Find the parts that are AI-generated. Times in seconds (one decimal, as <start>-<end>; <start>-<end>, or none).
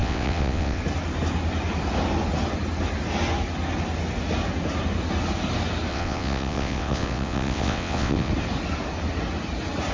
0.0-0.8; 5.9-8.3